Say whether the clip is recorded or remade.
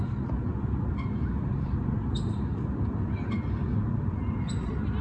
recorded